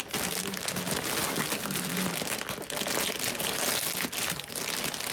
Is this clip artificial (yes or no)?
no